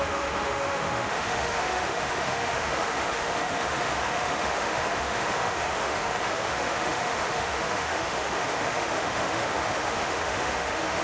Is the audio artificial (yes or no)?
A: yes